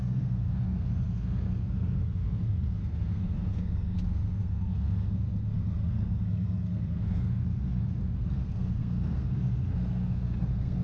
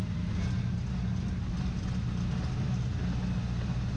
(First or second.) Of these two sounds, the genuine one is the second